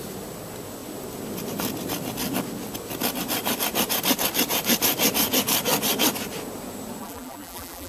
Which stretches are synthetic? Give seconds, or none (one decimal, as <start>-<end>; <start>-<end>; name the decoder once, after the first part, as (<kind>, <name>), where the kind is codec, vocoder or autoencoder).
7.0-7.9 (vocoder, BigVGAN v2)